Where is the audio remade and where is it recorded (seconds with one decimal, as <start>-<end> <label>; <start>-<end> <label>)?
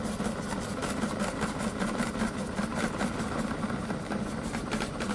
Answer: 0.0-0.8 recorded; 0.8-2.1 remade; 2.1-2.7 recorded; 2.7-4.3 remade; 4.3-5.1 recorded